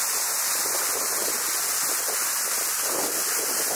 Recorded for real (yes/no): yes